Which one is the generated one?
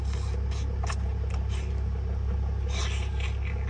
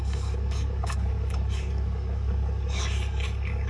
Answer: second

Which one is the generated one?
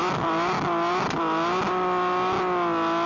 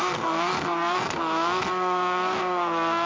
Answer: second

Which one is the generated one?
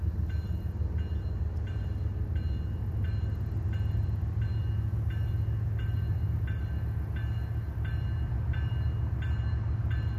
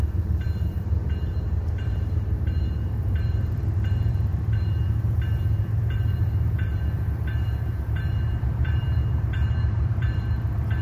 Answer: second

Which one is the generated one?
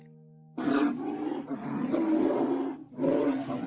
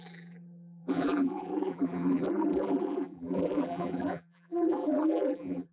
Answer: second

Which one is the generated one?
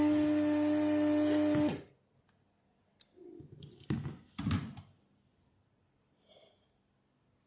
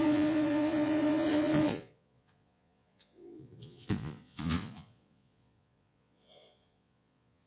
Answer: second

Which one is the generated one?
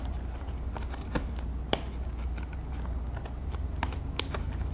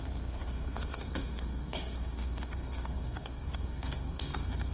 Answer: second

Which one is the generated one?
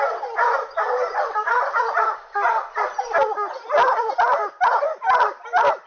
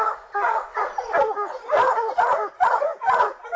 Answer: second